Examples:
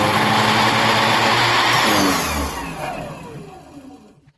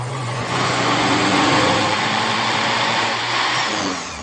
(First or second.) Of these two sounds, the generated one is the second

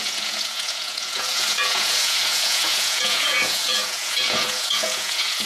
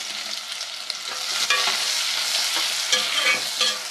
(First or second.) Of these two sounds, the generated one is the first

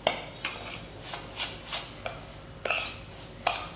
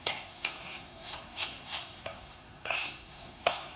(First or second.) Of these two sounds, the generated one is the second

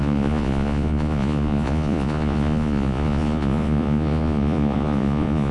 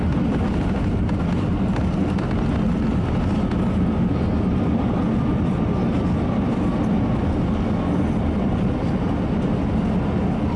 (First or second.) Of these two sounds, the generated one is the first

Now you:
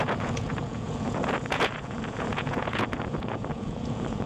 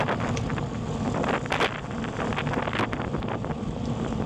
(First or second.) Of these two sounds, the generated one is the first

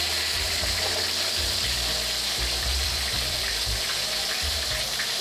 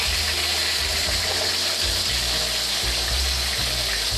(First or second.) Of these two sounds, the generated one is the first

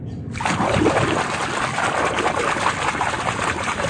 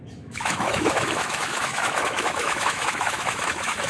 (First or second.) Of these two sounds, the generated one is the second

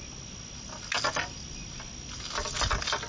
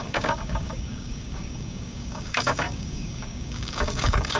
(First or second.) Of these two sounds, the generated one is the second